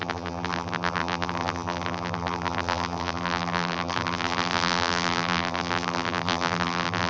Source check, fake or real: fake